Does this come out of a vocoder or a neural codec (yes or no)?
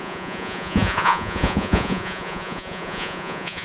yes